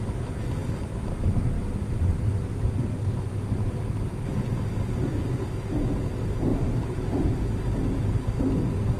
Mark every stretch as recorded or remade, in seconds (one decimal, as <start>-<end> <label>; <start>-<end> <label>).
0.0-6.5 recorded; 6.5-7.2 remade; 7.2-9.0 recorded